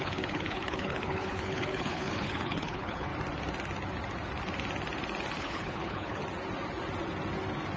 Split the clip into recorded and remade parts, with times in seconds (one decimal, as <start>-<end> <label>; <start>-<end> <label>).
0.0-3.1 remade; 3.1-5.4 recorded; 5.4-6.2 remade; 6.2-7.8 recorded